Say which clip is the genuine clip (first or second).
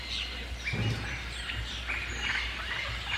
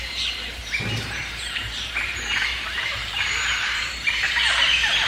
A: first